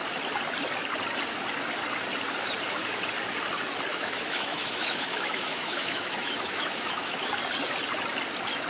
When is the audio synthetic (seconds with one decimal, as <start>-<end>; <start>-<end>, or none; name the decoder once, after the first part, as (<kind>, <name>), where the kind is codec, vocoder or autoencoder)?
3.9-7.3 (autoencoder, DAC-VAE)